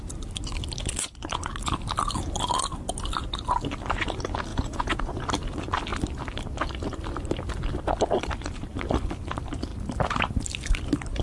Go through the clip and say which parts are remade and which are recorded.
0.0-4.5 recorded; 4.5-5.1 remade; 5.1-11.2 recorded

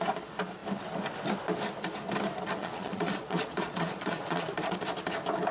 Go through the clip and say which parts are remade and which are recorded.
0.0-2.6 recorded; 2.6-4.8 remade; 4.8-5.5 recorded

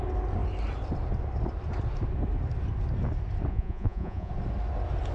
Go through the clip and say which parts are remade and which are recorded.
0.0-3.5 recorded; 3.5-4.3 remade; 4.3-5.1 recorded

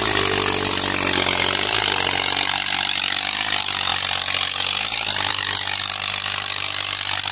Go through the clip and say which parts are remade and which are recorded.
0.0-7.3 recorded

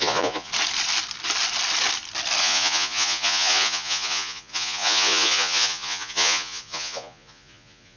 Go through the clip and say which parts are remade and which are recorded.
0.0-0.5 remade; 0.5-2.4 recorded; 2.4-8.0 remade

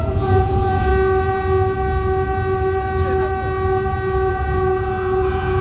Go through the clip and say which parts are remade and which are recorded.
0.0-0.9 remade; 0.9-4.3 recorded; 4.3-5.6 remade

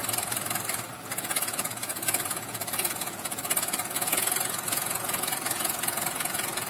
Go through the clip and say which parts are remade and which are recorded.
0.0-0.9 recorded; 0.9-6.7 remade

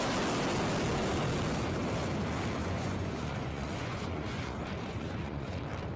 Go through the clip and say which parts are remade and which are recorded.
0.0-2.6 recorded; 2.6-5.6 remade; 5.6-6.0 recorded